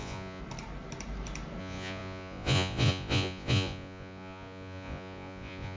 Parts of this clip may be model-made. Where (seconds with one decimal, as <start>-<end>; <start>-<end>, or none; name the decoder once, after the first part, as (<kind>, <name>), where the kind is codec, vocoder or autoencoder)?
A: 0.0-0.4 (vocoder, Vocos); 1.6-5.8